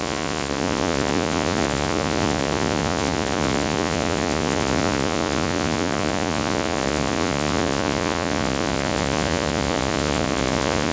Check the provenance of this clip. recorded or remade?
remade